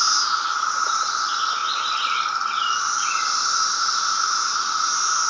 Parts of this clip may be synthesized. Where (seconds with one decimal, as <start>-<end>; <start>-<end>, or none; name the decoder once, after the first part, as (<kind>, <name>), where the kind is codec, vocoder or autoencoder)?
none